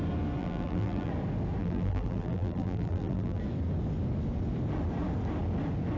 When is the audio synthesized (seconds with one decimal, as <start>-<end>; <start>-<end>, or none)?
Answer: 0.4-1.1; 1.6-3.4